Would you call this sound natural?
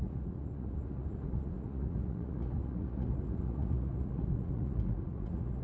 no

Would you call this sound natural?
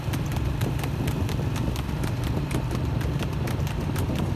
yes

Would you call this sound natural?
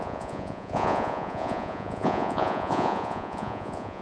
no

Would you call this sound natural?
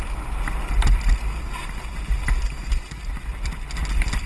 yes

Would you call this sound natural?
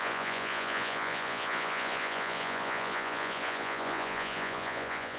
no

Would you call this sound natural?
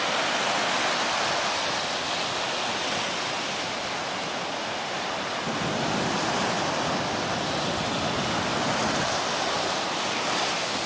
yes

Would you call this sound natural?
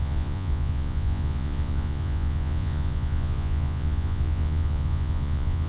no